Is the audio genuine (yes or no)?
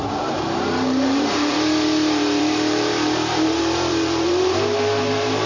no